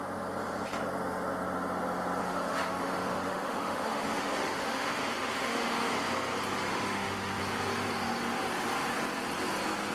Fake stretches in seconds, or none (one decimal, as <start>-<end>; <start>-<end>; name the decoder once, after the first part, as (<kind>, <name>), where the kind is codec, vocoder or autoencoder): 2.2-5.9 (autoencoder, DAC-VAE); 6.7-7.4